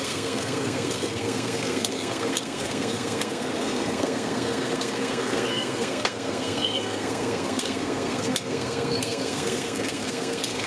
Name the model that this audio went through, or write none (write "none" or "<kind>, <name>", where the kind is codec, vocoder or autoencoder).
codec, SNAC